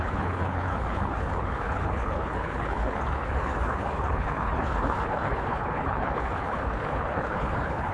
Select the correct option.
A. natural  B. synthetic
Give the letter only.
B